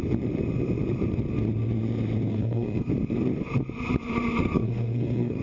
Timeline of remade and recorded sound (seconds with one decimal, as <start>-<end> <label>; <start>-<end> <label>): 0.0-2.3 recorded; 2.3-2.9 remade; 2.9-4.4 recorded; 4.4-5.4 remade